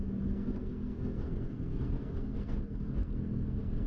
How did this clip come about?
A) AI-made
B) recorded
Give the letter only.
A